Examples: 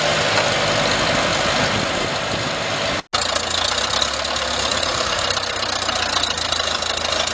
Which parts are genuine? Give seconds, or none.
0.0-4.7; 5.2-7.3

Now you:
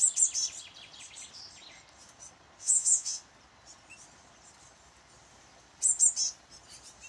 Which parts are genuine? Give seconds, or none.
0.0-2.6; 3.2-7.1

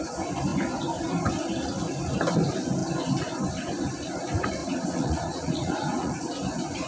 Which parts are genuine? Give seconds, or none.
0.0-4.6; 6.2-6.9